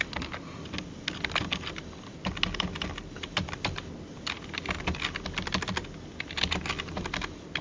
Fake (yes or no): no